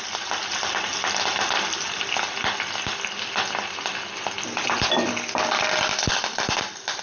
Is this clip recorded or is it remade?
recorded